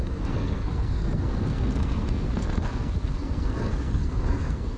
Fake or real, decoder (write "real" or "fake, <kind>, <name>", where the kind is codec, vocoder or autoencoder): fake, codec, SNAC